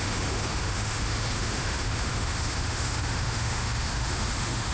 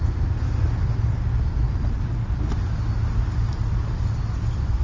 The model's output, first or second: first